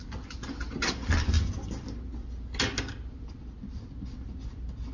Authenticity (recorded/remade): recorded